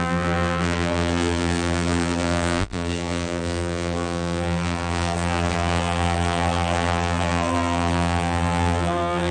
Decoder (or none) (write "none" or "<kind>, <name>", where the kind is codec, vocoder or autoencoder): vocoder, BigVGAN v2